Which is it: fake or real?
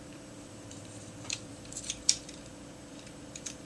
fake